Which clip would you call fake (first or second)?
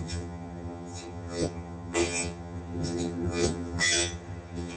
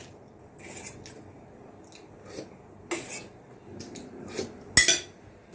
first